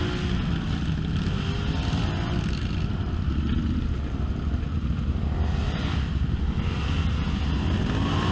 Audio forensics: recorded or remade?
recorded